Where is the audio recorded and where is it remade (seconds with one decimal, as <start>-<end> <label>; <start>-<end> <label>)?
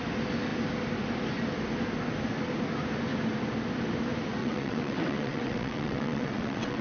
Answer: 0.0-4.4 recorded; 4.4-6.8 remade